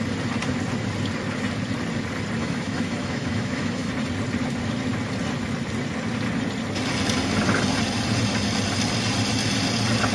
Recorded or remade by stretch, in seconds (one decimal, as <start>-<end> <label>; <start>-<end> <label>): 0.0-2.4 recorded; 2.4-3.9 remade; 3.9-10.1 recorded